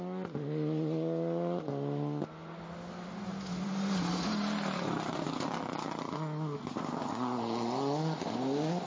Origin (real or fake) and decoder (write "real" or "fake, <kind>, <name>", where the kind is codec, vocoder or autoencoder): real